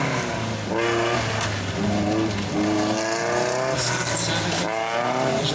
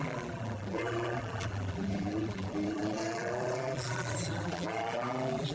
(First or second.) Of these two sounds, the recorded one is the first